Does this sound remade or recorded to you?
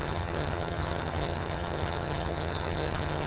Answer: remade